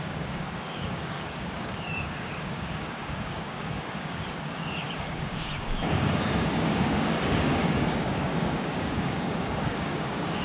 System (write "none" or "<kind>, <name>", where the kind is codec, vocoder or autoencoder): codec, DAC